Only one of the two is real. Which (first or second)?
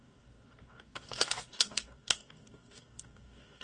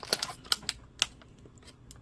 second